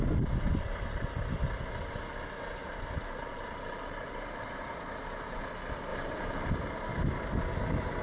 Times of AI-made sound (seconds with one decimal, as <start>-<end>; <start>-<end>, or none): 2.6-5.4; 5.9-6.5